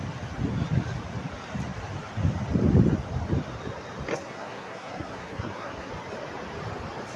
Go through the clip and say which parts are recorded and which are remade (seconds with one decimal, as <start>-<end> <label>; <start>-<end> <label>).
0.0-4.1 recorded; 4.1-5.9 remade; 5.9-7.2 recorded

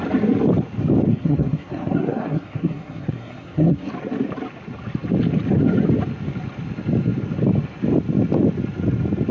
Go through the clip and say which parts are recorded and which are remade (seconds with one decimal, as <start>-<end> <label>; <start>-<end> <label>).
0.0-1.1 recorded; 1.1-3.9 remade; 3.9-9.3 recorded

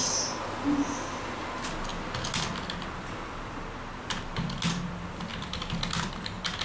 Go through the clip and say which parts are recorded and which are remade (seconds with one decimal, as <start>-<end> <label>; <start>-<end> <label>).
0.0-6.6 recorded

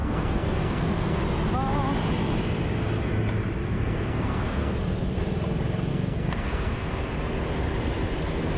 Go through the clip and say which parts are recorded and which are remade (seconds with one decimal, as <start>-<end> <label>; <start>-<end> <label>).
0.0-1.2 remade; 1.2-3.6 recorded; 3.6-4.8 remade; 4.8-5.9 recorded; 5.9-7.1 remade; 7.1-8.6 recorded

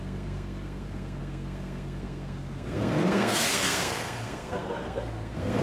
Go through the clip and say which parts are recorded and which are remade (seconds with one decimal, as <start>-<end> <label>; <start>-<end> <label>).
0.0-5.6 remade

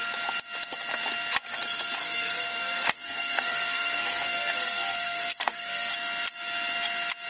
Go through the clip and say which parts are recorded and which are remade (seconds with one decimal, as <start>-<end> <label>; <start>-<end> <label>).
0.0-2.0 recorded; 2.0-5.9 remade; 5.9-7.3 recorded